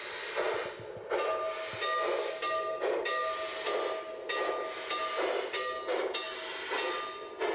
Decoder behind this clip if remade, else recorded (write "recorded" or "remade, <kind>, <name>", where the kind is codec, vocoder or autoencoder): recorded